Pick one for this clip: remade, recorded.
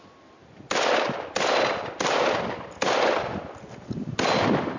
recorded